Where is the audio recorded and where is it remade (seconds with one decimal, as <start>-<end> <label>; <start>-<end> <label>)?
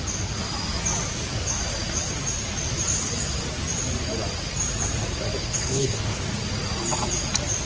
0.0-5.4 recorded; 5.4-6.2 remade; 6.2-7.7 recorded